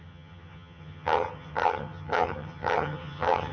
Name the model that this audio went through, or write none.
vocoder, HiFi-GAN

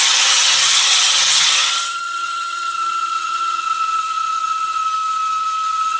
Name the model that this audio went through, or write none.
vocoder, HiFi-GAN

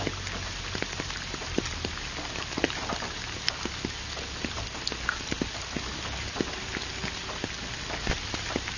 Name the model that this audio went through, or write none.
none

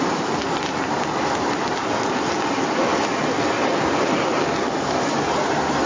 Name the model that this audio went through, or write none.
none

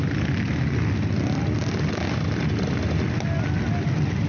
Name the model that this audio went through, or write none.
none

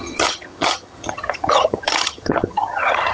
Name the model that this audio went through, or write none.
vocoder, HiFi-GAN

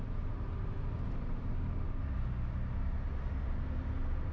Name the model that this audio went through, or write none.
none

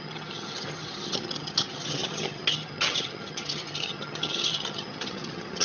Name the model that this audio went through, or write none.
vocoder, HiFi-GAN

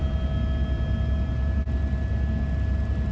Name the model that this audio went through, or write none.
none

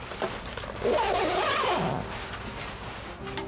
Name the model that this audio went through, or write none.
none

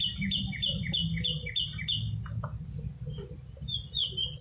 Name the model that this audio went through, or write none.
none